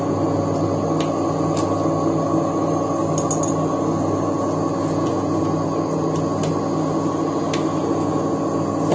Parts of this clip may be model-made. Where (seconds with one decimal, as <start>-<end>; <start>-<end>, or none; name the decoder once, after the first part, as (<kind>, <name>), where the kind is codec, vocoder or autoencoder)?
none